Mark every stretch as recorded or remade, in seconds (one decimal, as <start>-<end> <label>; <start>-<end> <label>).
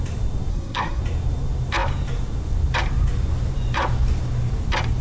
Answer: 0.0-0.5 recorded; 0.5-1.0 remade; 1.0-5.0 recorded